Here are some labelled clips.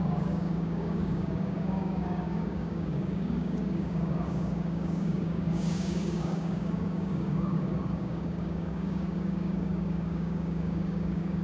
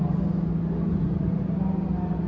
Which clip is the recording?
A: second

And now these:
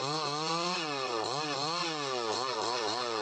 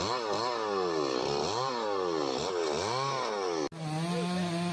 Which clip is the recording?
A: second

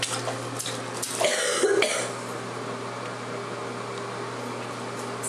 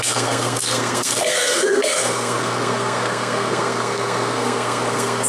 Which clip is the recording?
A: first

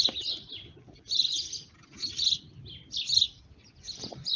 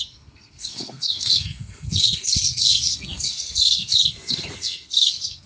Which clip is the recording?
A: first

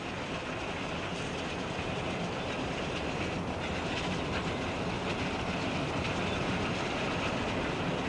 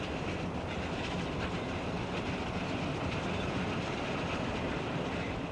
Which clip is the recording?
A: first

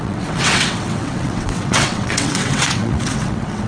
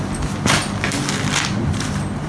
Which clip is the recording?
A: second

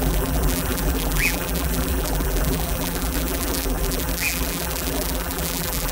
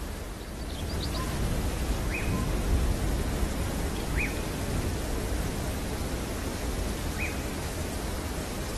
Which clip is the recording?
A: second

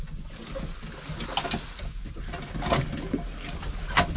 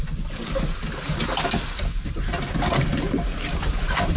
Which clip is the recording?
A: first